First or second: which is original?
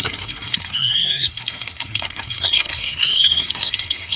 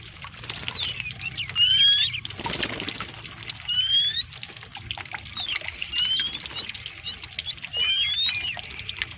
second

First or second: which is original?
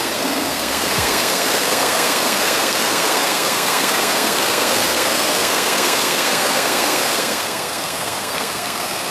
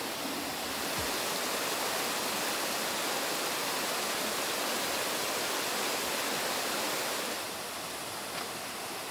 second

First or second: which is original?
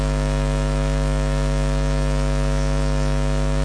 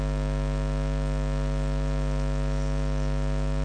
second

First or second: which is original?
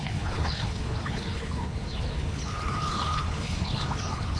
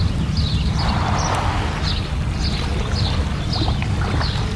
second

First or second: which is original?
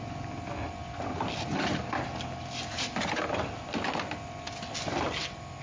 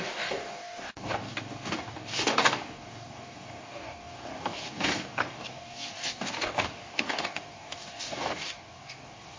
first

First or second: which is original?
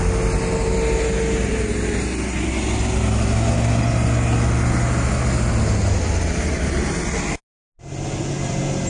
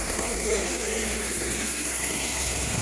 first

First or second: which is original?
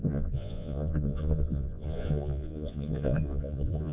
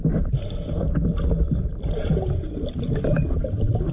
second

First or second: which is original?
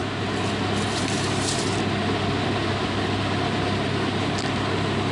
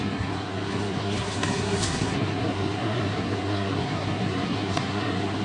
first